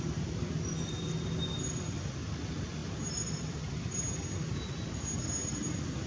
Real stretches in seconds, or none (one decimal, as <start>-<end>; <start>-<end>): 0.0-6.1